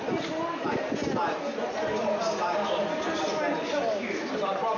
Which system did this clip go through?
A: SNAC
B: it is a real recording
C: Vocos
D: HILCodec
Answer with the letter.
B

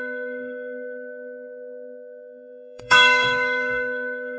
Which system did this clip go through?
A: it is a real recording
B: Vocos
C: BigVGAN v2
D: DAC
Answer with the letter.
D